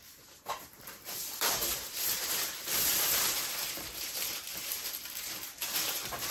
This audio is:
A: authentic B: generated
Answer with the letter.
B